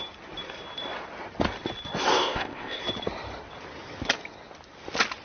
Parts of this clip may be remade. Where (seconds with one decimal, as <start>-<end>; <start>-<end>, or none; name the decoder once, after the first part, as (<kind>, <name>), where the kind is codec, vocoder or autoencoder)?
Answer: 2.1-2.8 (codec, ZipCodec)